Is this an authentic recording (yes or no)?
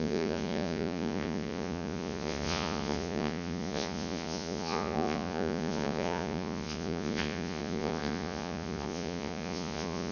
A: no